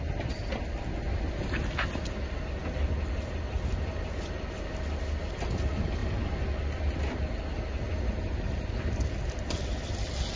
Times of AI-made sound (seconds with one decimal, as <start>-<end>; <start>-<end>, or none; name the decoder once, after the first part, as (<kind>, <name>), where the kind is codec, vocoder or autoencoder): none